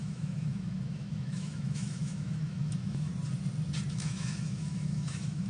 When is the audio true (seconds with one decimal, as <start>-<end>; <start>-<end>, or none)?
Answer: 3.1-3.9

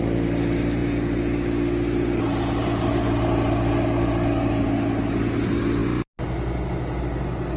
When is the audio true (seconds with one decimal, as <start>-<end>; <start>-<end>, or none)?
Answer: 0.0-7.6

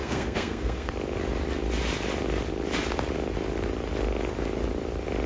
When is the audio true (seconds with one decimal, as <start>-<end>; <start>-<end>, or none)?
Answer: 0.9-5.3

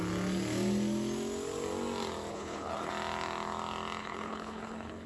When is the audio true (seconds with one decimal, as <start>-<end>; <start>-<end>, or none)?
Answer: 0.0-2.3; 2.9-4.0